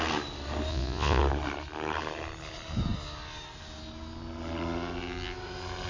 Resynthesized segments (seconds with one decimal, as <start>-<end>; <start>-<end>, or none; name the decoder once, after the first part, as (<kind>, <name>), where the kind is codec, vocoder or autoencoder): 0.7-1.2 (vocoder, Vocos)